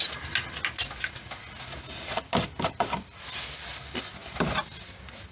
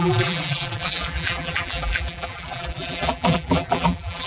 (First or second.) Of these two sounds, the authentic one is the first